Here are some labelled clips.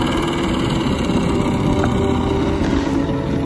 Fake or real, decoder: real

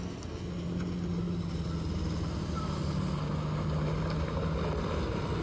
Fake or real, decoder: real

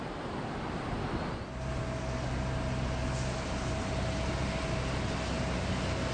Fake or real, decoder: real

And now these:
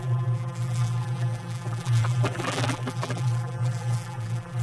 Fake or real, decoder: fake, vocoder, BigVGAN v2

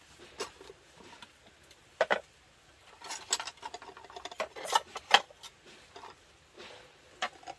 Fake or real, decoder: real